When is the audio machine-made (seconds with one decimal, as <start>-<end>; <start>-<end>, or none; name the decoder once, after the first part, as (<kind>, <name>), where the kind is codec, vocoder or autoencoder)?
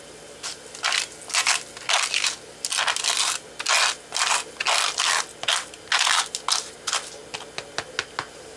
none